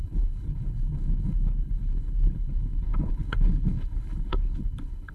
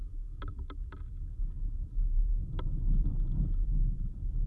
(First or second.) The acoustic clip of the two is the second